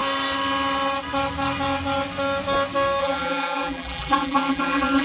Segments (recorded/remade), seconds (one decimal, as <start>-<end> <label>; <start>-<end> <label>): 0.0-3.0 recorded; 3.0-5.0 remade